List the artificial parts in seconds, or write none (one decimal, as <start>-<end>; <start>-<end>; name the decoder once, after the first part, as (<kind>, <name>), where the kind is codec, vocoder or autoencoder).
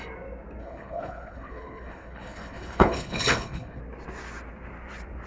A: 0.6-3.8 (codec, HILCodec)